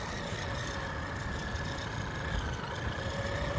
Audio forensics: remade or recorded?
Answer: recorded